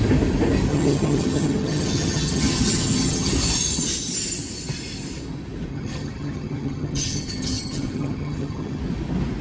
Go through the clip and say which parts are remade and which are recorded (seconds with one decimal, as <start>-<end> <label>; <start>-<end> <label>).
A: 0.0-0.7 recorded; 0.7-3.3 remade; 3.3-5.7 recorded; 5.7-8.8 remade; 8.8-9.4 recorded